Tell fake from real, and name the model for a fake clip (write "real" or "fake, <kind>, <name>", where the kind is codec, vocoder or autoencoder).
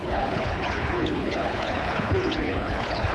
fake, codec, HILCodec